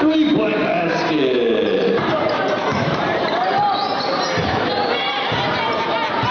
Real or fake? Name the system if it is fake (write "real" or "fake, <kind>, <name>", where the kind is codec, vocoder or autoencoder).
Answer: fake, vocoder, BigVGAN v2